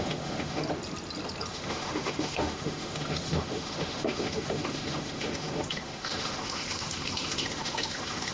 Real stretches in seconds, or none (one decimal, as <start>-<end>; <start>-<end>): 0.6-1.5